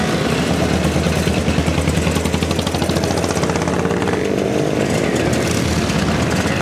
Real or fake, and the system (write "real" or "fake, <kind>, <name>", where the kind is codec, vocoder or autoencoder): real